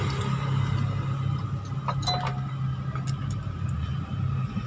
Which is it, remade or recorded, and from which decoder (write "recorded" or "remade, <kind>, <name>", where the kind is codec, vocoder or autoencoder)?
recorded